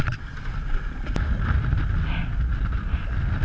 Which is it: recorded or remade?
recorded